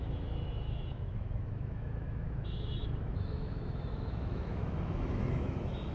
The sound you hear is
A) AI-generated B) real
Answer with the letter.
A